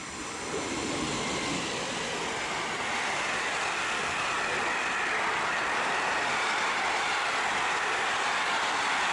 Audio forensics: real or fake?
fake